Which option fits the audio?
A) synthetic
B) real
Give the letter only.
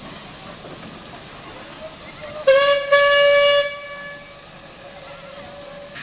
B